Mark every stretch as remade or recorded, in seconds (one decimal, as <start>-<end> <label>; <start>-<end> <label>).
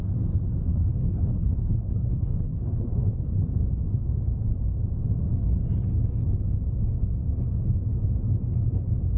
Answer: 0.0-0.7 recorded; 0.7-3.4 remade; 3.4-9.2 recorded